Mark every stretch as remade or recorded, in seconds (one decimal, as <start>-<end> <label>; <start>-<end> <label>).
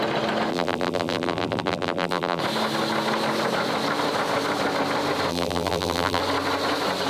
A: 0.0-0.5 recorded; 0.5-2.4 remade; 2.4-5.3 recorded; 5.3-6.2 remade; 6.2-7.1 recorded